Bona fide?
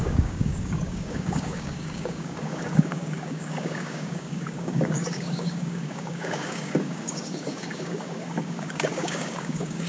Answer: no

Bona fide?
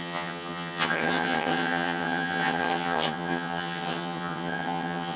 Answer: no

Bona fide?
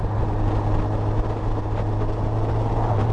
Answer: yes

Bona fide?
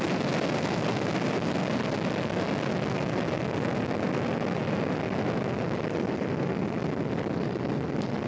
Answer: yes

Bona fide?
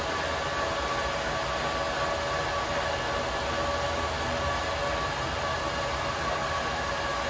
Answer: yes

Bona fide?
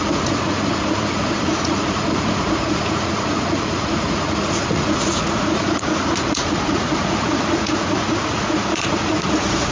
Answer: no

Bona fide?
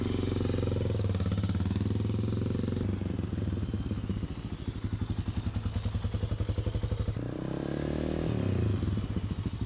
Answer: yes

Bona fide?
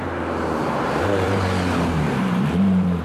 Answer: no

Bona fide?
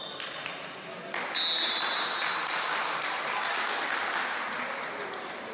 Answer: yes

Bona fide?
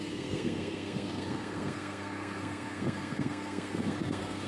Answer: no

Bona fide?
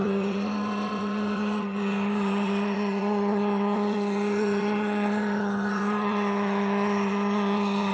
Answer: no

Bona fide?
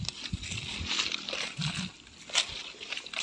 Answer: yes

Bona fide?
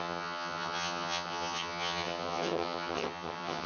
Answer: no